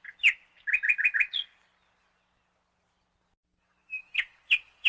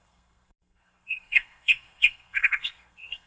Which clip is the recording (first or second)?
first